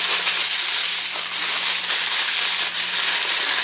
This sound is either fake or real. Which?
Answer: real